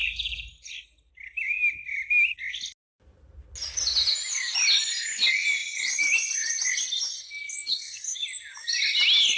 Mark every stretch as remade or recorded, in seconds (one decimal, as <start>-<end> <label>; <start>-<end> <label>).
0.0-5.6 recorded; 5.6-6.3 remade; 6.3-9.4 recorded